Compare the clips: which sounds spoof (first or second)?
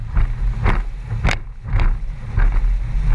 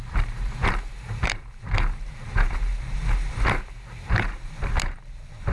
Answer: second